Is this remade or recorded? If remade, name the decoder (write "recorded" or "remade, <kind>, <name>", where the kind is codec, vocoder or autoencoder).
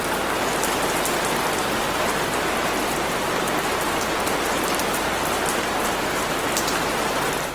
recorded